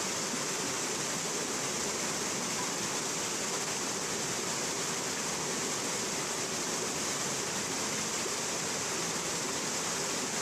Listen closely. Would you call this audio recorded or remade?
recorded